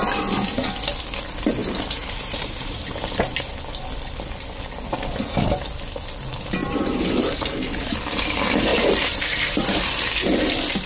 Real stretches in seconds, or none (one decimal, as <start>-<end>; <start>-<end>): 0.0-1.6; 3.5-6.6; 7.3-8.7; 9.9-10.9

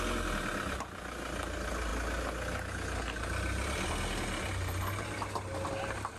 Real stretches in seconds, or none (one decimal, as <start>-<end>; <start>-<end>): 0.0-6.2

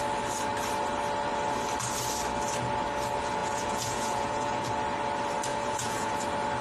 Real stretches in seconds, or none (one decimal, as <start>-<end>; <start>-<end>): 0.0-3.4; 4.7-5.5; 6.1-6.6